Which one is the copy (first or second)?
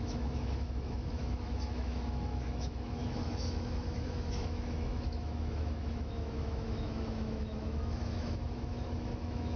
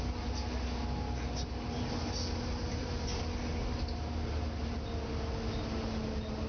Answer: first